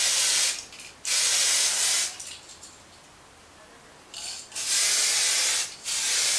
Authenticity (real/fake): real